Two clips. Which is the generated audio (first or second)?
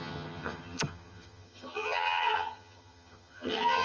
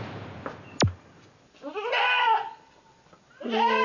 first